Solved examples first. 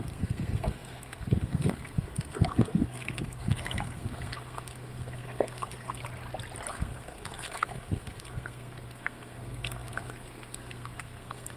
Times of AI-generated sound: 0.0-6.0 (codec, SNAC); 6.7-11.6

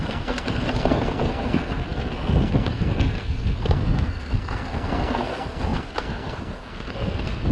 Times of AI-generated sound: 0.0-7.5 (codec, SNAC)

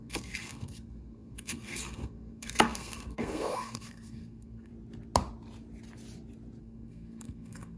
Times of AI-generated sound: 0.0-4.7 (codec, SNAC); 6.6-7.8

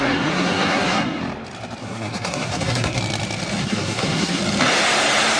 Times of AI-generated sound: 0.0-1.2 (codec, SNAC); 1.8-3.0; 3.6-4.4

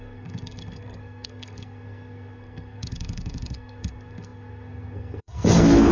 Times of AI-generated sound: 0.0-5.9 (codec, SNAC)